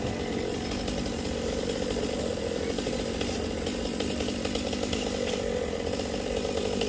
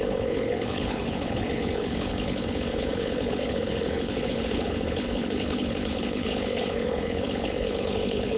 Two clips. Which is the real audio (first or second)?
first